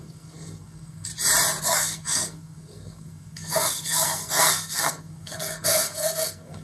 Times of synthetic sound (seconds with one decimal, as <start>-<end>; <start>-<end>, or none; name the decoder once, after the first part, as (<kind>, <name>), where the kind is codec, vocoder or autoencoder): 0.0-1.1 (codec, SNAC); 1.6-6.6